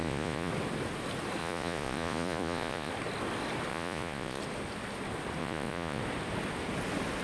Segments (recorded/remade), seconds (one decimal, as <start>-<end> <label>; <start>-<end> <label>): 0.0-0.5 remade; 0.5-1.4 recorded; 1.4-2.9 remade; 2.9-3.7 recorded; 3.7-4.4 remade; 4.4-5.4 recorded; 5.4-6.0 remade; 6.0-7.2 recorded